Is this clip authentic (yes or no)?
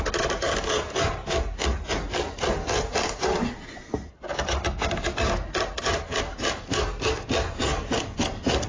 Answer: yes